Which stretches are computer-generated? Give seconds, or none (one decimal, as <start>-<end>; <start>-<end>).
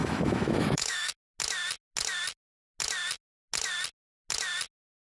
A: 0.0-1.1